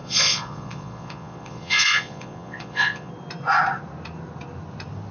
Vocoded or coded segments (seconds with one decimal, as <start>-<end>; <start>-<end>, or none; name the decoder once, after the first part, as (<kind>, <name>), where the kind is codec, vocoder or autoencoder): 0.0-3.1 (vocoder, Vocos)